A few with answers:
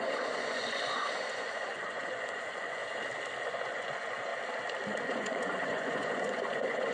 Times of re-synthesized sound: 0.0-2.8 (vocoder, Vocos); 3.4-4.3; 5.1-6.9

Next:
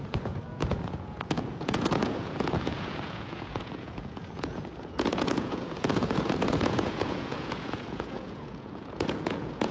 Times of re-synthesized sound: 0.0-9.7 (vocoder, Vocos)

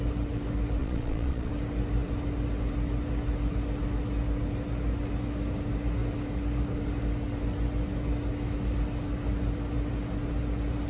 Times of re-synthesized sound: 0.8-1.5 (vocoder, Vocos)

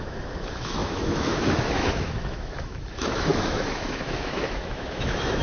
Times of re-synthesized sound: 0.0-5.4 (autoencoder, DAC-VAE)

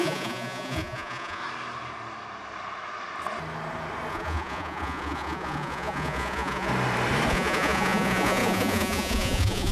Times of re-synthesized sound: 0.0-1.4 (vocoder, Vocos); 4.1-6.7; 7.3-9.7

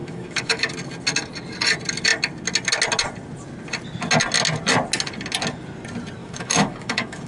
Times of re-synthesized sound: 0.0-0.7 (autoencoder, DAC-VAE); 6.2-7.3